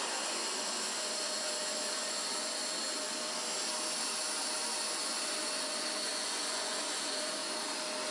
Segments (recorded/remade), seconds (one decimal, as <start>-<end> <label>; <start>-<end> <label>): 0.0-2.6 remade; 2.6-4.6 recorded; 4.6-7.4 remade; 7.4-8.1 recorded